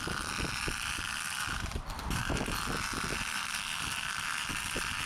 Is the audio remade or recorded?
remade